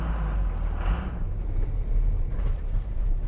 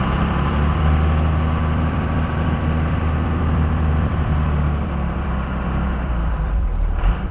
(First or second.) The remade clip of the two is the second